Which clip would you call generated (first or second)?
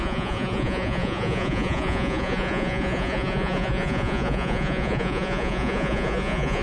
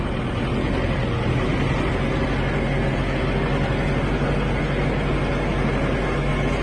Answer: first